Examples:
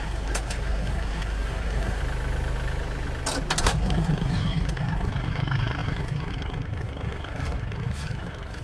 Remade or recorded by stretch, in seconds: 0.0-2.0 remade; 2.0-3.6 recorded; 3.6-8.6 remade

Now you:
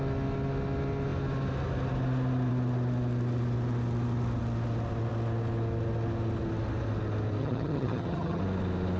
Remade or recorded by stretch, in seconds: 0.0-7.4 recorded; 7.4-8.4 remade; 8.4-9.0 recorded

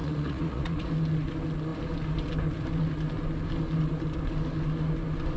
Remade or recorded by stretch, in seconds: 0.0-0.9 remade; 0.9-5.4 recorded

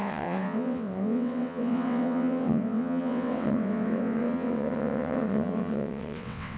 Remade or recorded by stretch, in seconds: 0.0-6.6 remade

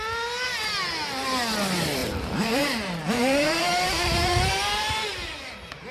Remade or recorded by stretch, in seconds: 0.0-2.0 recorded; 2.0-5.5 remade; 5.5-5.9 recorded